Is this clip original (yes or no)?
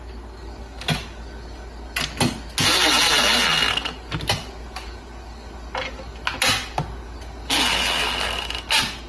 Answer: yes